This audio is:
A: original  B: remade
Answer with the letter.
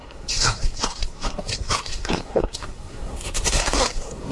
B